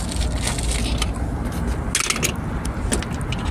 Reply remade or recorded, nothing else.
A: recorded